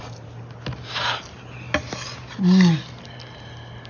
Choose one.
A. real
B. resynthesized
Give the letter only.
A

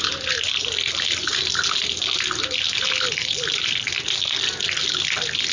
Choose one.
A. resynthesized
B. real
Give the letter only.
B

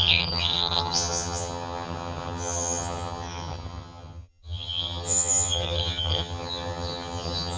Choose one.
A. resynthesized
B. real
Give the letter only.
A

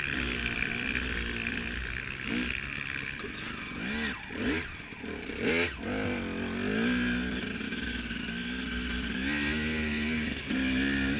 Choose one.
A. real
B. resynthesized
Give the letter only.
A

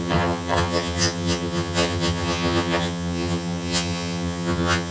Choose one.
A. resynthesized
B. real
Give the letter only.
A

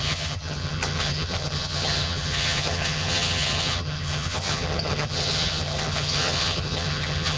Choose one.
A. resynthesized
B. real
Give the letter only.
A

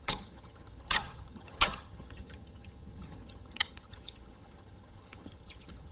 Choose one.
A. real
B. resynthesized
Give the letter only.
B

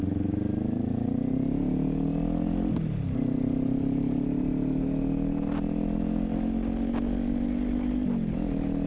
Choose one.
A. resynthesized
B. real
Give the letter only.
B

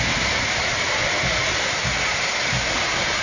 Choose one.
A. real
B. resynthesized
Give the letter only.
A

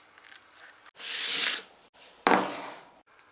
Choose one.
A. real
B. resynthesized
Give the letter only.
A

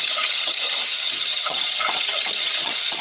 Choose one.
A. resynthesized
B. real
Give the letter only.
A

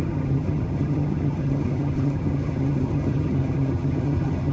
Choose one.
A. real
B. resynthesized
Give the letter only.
B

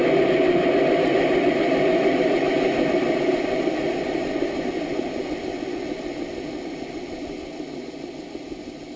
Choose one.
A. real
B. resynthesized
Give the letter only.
A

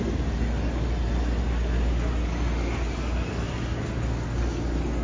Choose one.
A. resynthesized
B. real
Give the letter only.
B